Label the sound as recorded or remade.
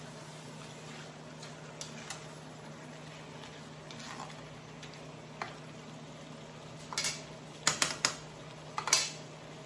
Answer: recorded